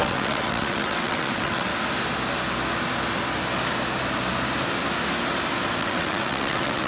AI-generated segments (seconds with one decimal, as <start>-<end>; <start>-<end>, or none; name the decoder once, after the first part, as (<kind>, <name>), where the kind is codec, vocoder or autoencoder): 0.0-1.7 (vocoder, WaveNeXt); 5.8-6.9